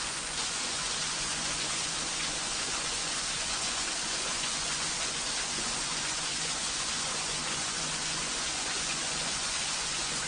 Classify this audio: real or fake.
fake